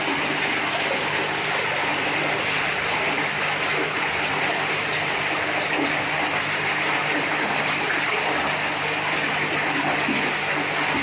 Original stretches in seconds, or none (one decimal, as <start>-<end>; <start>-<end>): 0.0-1.9; 2.9-11.0